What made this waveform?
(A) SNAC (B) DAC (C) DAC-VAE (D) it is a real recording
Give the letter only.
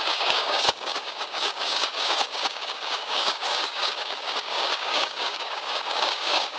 B